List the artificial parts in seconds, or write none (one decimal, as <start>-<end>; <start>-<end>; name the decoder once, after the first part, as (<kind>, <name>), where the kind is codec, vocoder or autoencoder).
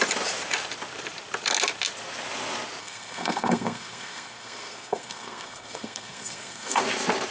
2.8-6.8 (codec, SNAC)